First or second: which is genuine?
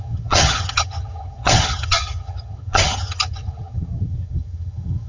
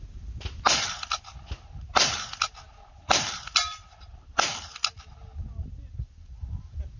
second